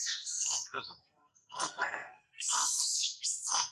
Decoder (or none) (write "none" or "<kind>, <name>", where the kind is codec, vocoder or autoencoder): codec, SNAC